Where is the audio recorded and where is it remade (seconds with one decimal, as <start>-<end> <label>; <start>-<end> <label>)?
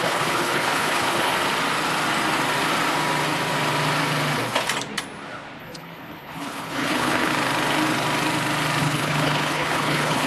0.0-1.3 remade; 1.3-5.6 recorded; 5.6-7.3 remade; 7.3-8.8 recorded; 8.8-10.3 remade